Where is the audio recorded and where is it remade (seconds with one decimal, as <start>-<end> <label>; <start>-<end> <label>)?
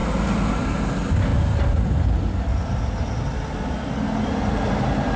0.0-5.2 recorded